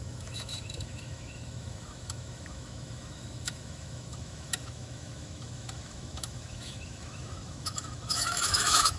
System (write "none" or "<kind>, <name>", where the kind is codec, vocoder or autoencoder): autoencoder, DAC-VAE